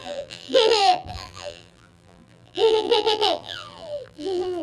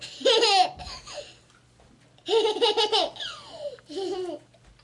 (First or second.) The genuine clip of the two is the second